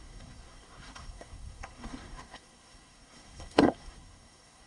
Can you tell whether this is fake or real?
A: fake